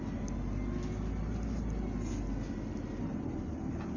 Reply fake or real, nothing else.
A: real